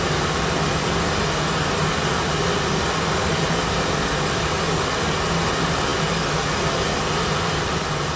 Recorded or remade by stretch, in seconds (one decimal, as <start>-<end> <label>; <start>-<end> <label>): 0.0-8.2 recorded